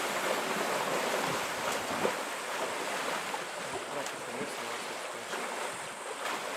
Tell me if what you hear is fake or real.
real